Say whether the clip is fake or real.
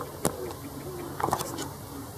real